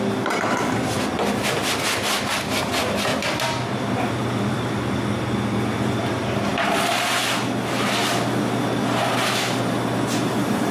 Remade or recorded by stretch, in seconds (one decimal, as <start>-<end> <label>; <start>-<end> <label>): 0.0-3.1 recorded; 3.1-5.9 remade; 5.9-10.7 recorded